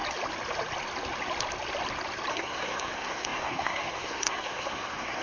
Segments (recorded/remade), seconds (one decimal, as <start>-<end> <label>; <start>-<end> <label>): 0.0-2.3 recorded; 2.3-5.2 remade